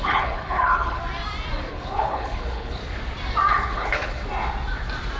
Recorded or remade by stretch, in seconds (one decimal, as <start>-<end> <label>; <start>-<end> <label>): 0.0-1.0 remade; 1.0-1.7 recorded; 1.7-2.8 remade; 2.8-3.5 recorded; 3.5-4.2 remade; 4.2-5.2 recorded